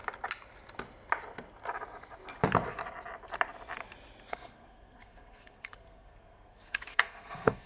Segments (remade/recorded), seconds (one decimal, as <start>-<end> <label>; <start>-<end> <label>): 0.0-4.3 recorded; 4.3-7.7 remade